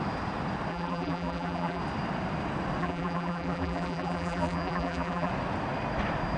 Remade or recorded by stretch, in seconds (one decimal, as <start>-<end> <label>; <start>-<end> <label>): 0.0-0.7 recorded; 0.7-1.8 remade; 1.8-2.8 recorded; 2.8-5.3 remade; 5.3-6.4 recorded